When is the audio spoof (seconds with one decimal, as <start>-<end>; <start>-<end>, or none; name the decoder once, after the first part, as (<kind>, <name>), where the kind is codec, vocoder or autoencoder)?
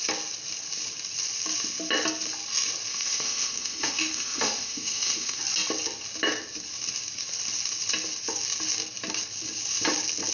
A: 2.9-5.4 (autoencoder, DAC-VAE)